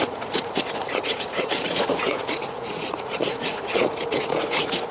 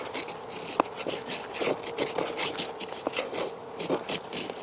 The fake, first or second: first